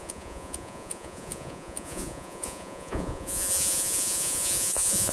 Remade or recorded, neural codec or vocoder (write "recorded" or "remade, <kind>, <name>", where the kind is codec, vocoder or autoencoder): remade, vocoder, Vocos